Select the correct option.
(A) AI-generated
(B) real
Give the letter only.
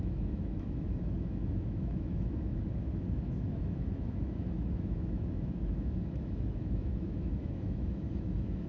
A